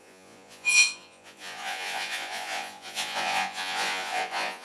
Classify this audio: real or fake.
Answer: fake